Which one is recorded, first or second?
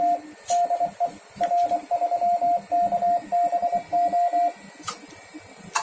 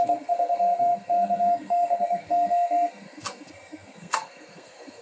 first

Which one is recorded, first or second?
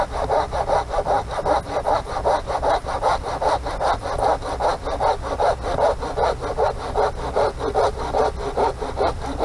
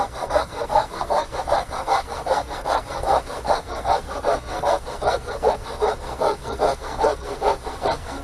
first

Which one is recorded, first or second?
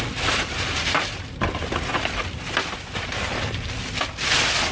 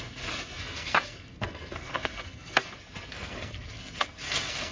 first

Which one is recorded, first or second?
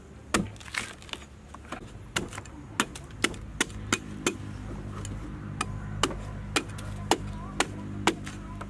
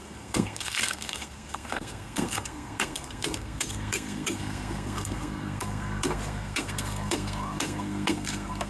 first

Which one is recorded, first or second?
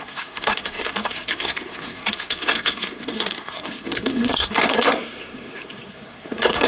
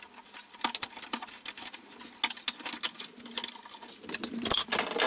second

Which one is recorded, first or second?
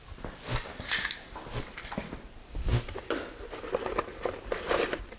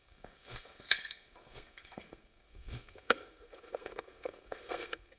first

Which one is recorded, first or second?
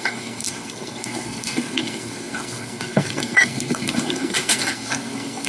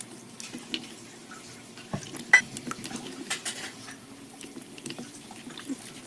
second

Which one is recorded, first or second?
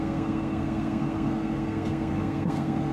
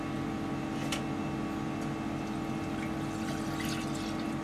second